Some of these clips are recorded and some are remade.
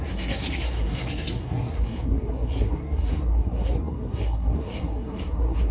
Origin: remade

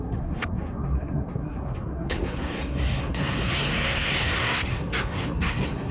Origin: remade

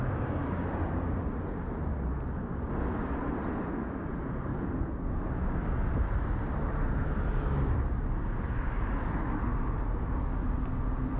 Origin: recorded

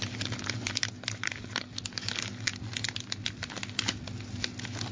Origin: recorded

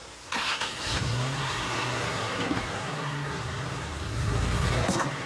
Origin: remade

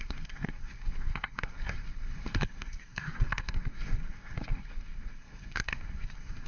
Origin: remade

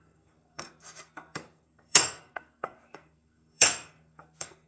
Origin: remade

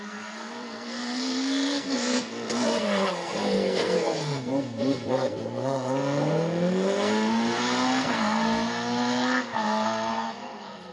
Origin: remade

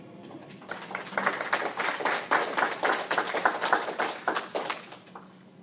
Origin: recorded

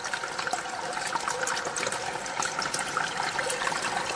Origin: recorded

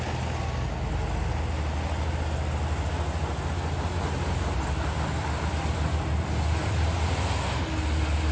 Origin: recorded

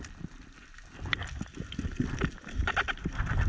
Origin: recorded